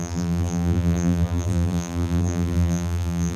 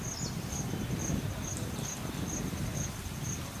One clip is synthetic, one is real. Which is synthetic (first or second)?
first